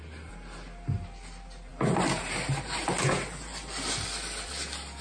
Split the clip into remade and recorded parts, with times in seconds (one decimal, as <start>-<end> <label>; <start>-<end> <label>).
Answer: 0.0-5.0 recorded